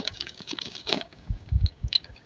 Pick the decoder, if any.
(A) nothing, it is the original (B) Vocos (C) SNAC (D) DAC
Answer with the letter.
D